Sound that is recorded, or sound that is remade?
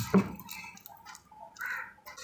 recorded